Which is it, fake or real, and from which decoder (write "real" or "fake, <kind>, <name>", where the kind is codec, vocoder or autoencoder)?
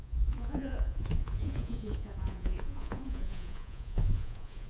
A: fake, vocoder, Vocos